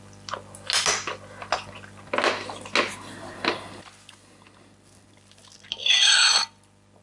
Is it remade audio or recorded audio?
recorded